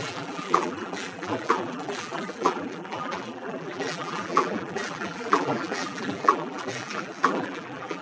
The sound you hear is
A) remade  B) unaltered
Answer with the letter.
A